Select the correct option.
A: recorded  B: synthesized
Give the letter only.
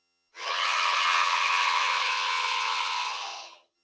B